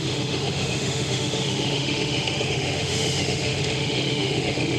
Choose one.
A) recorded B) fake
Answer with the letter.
B